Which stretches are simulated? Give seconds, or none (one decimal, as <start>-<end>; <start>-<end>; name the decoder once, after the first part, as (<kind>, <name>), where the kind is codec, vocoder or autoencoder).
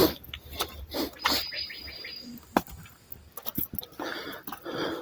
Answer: none